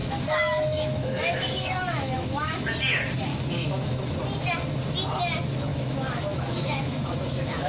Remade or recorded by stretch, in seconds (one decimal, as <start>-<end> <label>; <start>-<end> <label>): 0.0-2.6 remade; 2.6-3.3 recorded; 3.3-4.1 remade; 4.1-5.7 recorded; 5.7-7.7 remade